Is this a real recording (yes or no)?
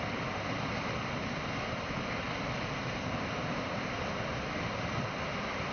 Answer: yes